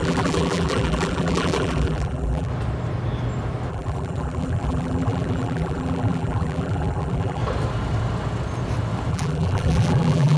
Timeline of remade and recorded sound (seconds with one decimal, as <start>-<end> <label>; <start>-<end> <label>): 0.0-2.5 remade; 2.5-3.7 recorded; 3.7-7.4 remade; 7.4-9.1 recorded; 9.1-10.4 remade